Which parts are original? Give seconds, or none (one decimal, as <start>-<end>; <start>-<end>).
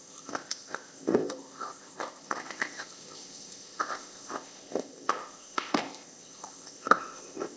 none